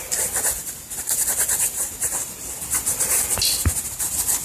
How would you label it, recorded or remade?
recorded